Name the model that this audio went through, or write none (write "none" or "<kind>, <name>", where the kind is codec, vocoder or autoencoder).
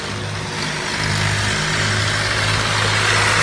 none